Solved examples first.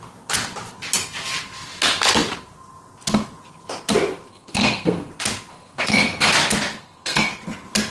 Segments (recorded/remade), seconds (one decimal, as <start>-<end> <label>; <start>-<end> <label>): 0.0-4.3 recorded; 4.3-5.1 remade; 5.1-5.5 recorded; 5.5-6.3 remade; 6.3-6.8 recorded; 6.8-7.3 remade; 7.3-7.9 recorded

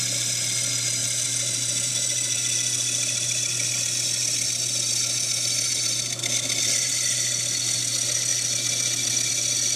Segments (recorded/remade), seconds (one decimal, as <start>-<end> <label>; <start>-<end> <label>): 0.0-9.8 recorded

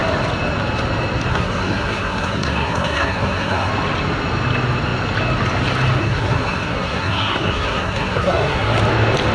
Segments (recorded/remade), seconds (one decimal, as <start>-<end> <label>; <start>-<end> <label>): 0.0-1.3 recorded; 1.3-3.7 remade; 3.7-6.0 recorded; 6.0-8.8 remade; 8.8-9.3 recorded